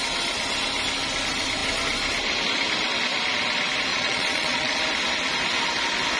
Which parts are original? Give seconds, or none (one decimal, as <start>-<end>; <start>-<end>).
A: 0.0-3.9; 4.8-6.2